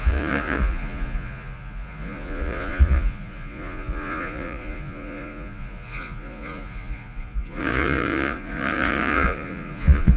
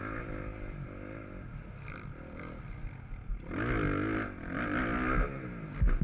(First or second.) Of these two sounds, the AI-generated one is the first